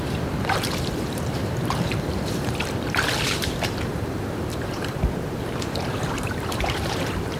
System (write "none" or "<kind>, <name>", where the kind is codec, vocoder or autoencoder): vocoder, BigVGAN v2